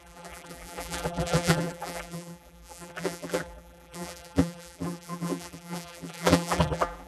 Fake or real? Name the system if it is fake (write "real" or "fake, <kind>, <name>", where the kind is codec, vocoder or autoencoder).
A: fake, vocoder, BigVGAN v2